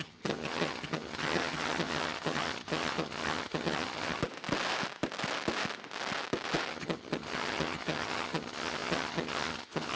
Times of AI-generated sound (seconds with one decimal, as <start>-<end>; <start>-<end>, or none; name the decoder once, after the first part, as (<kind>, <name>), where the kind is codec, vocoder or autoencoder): 0.0-4.2 (vocoder, HiFi-GAN); 6.7-10.0